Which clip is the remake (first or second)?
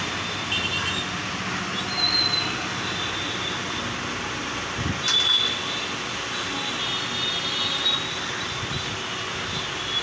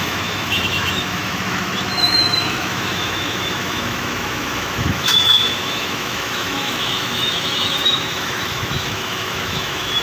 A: second